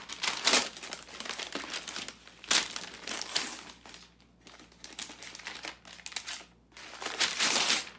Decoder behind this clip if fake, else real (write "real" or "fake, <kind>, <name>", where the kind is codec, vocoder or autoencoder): real